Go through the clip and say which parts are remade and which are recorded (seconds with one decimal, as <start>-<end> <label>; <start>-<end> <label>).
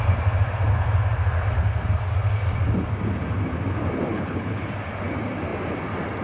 0.0-4.1 recorded; 4.1-4.7 remade; 4.7-6.2 recorded